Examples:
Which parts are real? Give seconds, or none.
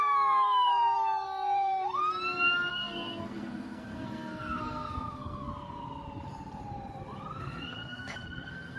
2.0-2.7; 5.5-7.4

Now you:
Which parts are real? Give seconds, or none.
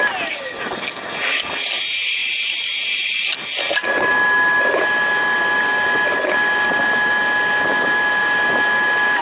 0.0-9.2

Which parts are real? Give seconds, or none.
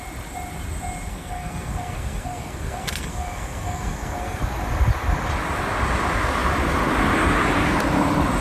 0.0-1.1; 4.4-8.4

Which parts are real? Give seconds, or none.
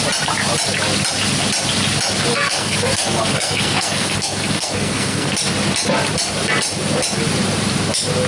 0.0-2.3; 5.3-8.3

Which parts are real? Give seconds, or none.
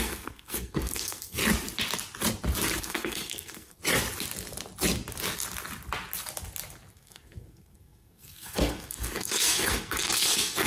1.4-2.8; 3.8-6.9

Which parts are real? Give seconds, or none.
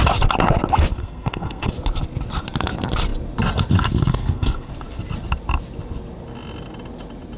0.0-1.0; 1.7-4.1; 4.7-7.4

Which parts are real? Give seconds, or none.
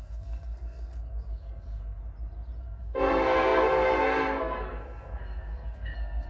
2.0-2.6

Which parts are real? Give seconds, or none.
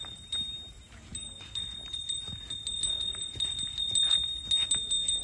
0.0-5.2